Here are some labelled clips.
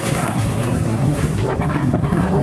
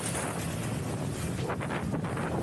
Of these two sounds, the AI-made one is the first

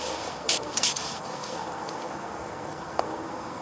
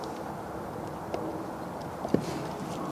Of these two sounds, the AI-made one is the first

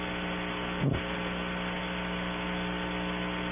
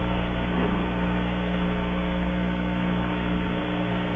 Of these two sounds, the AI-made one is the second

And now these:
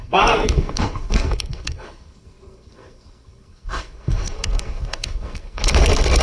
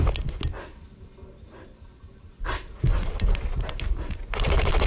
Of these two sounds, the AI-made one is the first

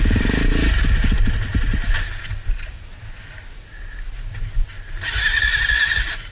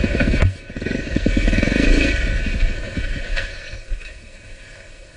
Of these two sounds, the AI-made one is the second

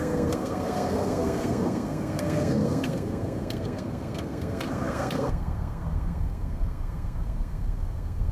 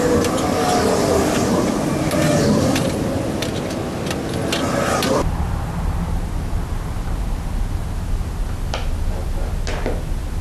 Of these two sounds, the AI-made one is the first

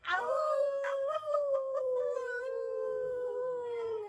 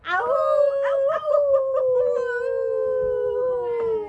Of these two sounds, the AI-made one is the first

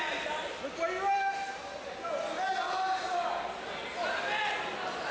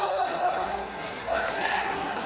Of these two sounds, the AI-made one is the second